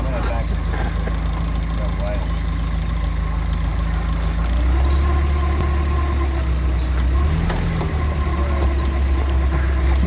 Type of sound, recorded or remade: recorded